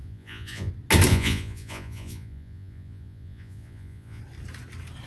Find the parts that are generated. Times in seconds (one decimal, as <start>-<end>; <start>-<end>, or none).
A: 0.0-0.7; 1.1-4.2